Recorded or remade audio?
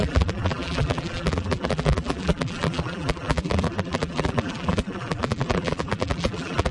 remade